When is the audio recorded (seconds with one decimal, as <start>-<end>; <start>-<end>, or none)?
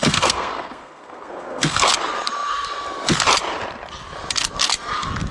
1.9-5.3